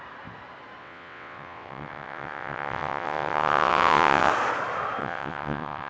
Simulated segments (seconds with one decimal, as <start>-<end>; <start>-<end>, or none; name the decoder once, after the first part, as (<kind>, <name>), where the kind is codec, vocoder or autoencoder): 0.8-4.3 (vocoder, WaveNeXt); 5.0-5.9